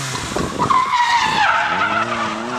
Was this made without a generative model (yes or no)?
yes